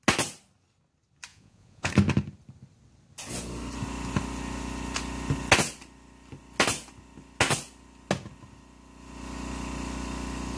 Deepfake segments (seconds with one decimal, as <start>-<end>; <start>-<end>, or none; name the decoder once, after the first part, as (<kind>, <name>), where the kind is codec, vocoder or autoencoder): 1.3-1.9 (vocoder, Vocos)